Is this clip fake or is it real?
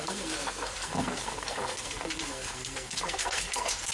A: fake